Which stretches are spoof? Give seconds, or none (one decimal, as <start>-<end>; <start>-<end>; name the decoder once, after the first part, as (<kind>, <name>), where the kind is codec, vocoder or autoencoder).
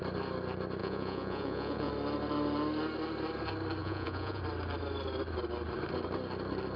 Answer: 0.8-1.9 (vocoder, Vocos); 3.8-4.4